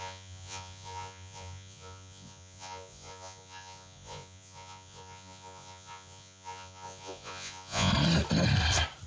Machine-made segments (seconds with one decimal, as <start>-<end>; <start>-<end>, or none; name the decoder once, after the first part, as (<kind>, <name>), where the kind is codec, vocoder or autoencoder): 0.0-7.9 (vocoder, Vocos)